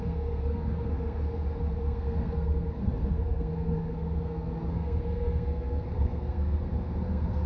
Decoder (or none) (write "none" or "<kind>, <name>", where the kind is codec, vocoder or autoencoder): codec, SNAC